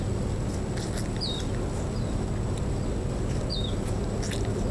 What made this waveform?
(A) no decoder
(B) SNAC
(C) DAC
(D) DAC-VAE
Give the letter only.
A